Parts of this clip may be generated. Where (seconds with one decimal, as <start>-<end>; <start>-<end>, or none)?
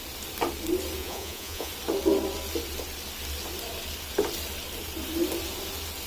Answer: 1.0-1.7